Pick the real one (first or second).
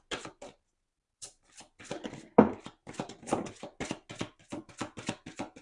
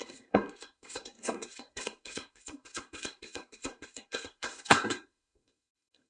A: first